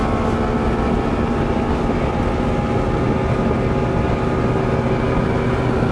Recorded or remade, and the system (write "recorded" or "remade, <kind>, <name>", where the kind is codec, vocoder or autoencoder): recorded